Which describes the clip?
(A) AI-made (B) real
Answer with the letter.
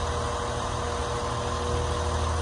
B